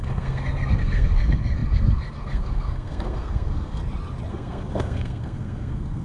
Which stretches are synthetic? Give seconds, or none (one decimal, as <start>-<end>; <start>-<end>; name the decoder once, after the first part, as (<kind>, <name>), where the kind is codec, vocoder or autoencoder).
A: 0.0-3.8 (codec, SNAC); 4.3-6.0